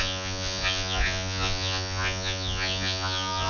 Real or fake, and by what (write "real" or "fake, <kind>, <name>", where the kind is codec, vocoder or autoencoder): fake, vocoder, Vocos